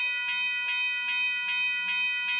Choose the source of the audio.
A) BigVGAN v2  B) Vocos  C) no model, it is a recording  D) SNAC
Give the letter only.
C